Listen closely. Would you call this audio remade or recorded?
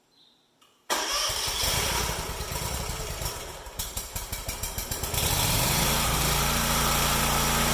remade